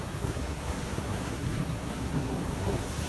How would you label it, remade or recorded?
remade